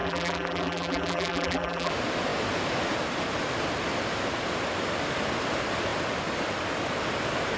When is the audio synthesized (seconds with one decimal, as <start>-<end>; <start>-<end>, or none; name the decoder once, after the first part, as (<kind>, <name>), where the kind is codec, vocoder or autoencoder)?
0.0-1.9 (vocoder, BigVGAN v2)